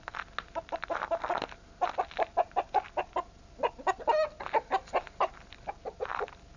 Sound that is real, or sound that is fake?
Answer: real